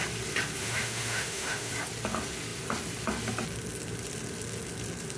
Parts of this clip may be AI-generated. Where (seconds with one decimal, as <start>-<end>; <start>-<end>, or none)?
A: 0.6-1.7